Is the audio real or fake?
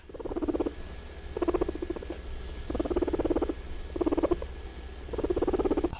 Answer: real